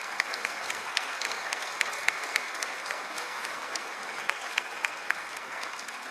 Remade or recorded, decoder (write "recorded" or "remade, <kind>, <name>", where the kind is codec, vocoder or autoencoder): remade, codec, SNAC